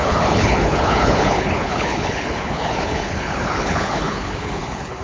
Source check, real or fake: fake